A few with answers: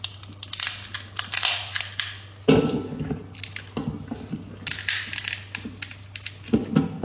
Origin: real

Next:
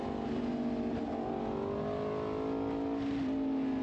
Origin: real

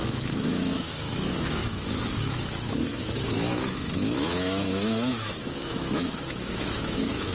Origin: fake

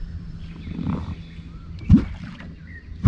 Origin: real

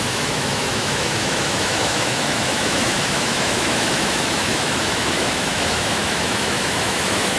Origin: fake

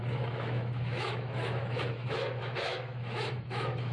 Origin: fake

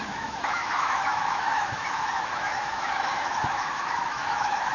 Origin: fake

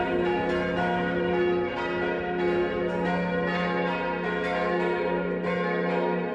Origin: real